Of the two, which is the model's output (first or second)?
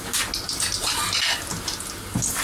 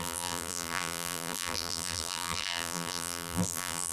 second